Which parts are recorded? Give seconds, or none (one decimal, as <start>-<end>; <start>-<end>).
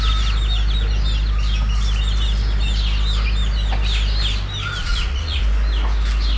0.0-4.8; 5.4-6.4